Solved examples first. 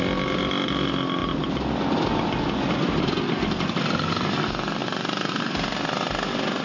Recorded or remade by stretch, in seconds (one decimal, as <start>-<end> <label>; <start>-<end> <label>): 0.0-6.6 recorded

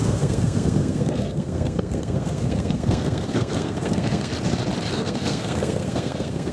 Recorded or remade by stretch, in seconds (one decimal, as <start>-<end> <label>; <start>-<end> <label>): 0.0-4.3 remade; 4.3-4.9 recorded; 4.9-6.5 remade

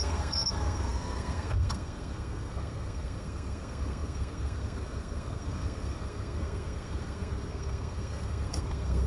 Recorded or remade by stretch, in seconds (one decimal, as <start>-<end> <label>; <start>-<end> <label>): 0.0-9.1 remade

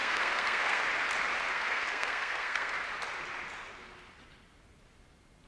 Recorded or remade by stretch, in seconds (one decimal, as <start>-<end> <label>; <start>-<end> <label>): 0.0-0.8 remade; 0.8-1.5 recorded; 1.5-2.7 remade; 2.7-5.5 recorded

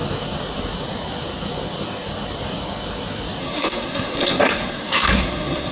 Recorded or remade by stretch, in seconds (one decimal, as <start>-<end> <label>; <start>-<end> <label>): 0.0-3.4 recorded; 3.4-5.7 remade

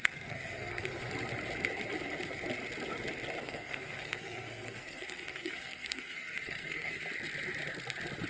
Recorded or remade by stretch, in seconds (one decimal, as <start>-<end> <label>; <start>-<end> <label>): 0.0-1.1 remade; 1.1-3.4 recorded; 3.4-7.0 remade; 7.0-8.3 recorded

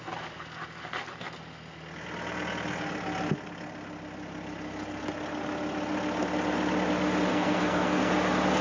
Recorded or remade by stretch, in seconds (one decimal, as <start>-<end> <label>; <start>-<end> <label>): 0.0-7.3 recorded; 7.3-8.1 remade; 8.1-8.6 recorded